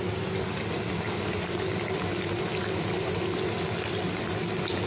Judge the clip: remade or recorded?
recorded